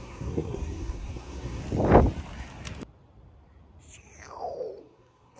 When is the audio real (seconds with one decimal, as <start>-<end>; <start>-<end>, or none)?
1.6-4.8